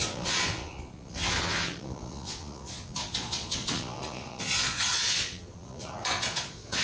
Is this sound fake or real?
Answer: fake